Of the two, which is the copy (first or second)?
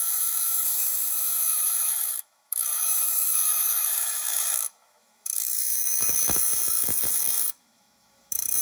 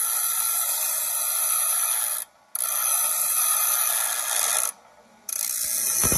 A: first